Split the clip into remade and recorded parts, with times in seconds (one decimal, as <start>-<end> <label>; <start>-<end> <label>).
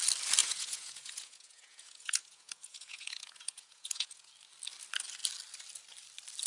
0.0-0.4 recorded; 0.4-4.3 remade; 4.3-6.5 recorded